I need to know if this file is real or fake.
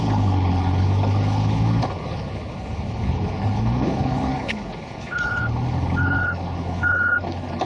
fake